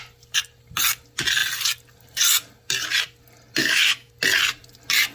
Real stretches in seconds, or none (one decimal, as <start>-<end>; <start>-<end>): 0.0-3.6; 4.1-5.1